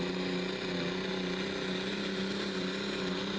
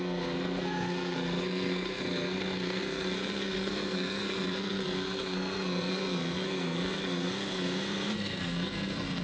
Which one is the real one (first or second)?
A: first